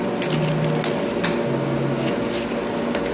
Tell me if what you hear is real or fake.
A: real